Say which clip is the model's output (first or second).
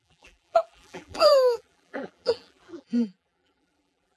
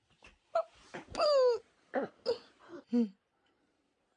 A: first